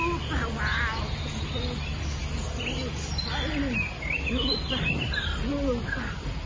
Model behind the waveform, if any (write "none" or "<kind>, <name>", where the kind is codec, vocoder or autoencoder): none